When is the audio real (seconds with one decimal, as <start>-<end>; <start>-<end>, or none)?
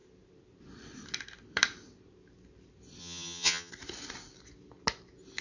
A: 0.0-3.0; 3.7-5.4